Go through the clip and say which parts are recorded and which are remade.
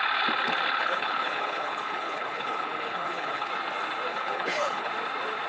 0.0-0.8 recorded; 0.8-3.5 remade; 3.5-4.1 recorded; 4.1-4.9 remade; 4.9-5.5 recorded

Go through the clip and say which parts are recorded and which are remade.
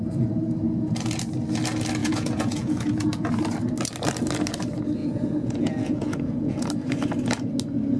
0.0-2.0 recorded; 2.0-3.3 remade; 3.3-5.0 recorded; 5.0-6.7 remade; 6.7-8.0 recorded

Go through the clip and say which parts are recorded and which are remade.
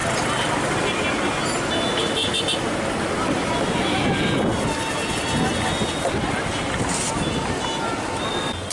0.0-8.7 recorded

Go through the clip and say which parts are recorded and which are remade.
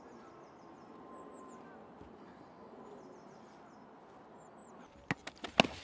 0.0-5.8 recorded